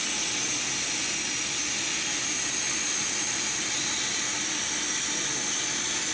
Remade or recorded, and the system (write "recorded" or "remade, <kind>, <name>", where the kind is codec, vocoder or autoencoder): recorded